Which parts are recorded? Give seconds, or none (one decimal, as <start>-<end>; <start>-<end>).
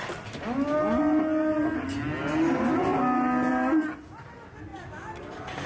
0.0-4.7